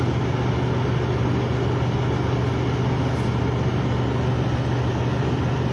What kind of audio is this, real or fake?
real